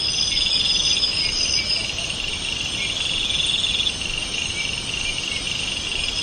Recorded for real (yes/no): yes